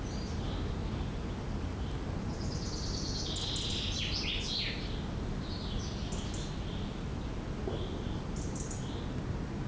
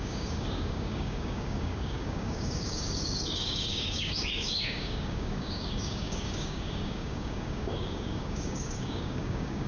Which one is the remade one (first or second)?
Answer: second